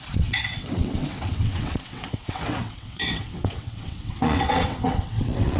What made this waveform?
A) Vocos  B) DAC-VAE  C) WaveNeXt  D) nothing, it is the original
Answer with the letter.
C